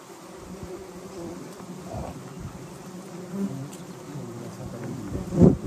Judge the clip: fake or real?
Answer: fake